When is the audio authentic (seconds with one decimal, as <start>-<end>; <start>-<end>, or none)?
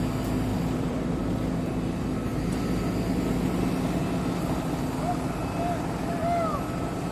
0.0-0.5; 1.2-7.1